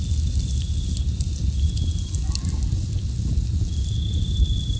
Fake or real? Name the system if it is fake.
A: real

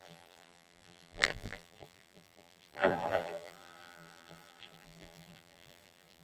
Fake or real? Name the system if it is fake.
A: fake, vocoder, BigVGAN v2